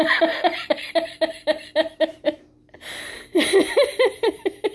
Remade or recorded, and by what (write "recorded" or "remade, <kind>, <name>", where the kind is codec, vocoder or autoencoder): recorded